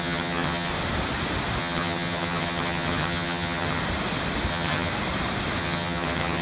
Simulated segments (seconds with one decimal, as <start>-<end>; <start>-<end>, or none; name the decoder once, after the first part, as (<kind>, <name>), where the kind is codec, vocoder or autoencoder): 0.0-0.7 (vocoder, HiFi-GAN); 1.6-3.8; 4.5-4.9; 5.6-6.4